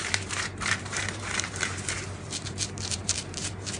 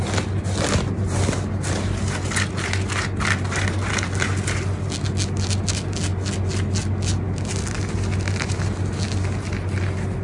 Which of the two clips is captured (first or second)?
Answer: second